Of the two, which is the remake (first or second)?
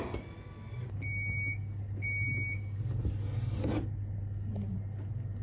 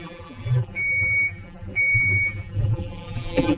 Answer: second